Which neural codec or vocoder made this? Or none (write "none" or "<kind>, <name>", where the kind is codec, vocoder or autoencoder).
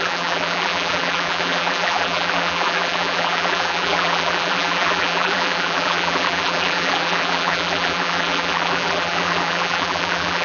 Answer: vocoder, BigVGAN v2